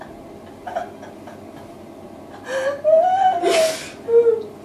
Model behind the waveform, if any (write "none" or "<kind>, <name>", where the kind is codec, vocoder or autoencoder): none